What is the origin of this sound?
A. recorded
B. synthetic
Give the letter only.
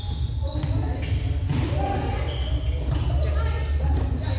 A